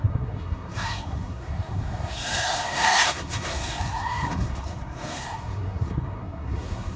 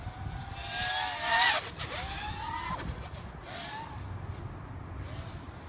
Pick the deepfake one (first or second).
first